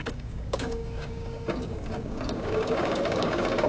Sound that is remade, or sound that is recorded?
remade